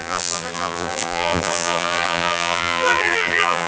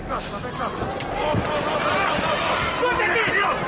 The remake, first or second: first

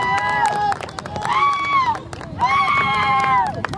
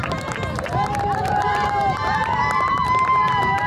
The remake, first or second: second